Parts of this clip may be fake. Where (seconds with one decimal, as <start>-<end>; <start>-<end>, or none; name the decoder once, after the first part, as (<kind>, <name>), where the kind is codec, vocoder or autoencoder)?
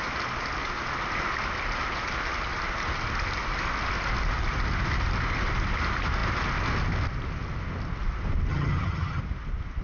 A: 8.5-9.2 (vocoder, HiFi-GAN)